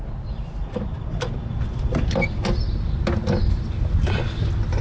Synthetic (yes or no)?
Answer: no